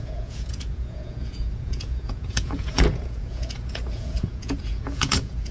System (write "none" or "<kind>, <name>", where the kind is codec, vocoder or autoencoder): vocoder, Vocos